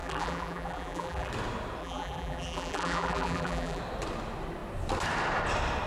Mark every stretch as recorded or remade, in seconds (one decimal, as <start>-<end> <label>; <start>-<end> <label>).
0.0-1.3 remade; 1.3-1.8 recorded; 1.8-3.8 remade; 3.8-5.9 recorded